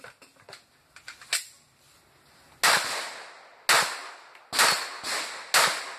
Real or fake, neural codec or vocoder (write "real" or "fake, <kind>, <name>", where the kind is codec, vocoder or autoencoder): real